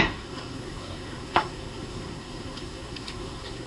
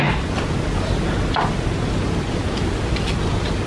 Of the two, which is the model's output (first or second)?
first